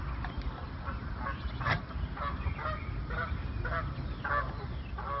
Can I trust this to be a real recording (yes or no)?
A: yes